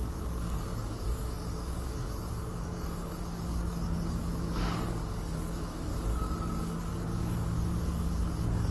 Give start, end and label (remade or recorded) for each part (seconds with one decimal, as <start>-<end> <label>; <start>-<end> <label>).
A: 0.0-5.9 remade; 5.9-6.6 recorded; 6.6-8.7 remade